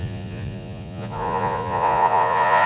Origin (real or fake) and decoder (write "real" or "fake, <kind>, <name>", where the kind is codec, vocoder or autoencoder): fake, vocoder, Vocos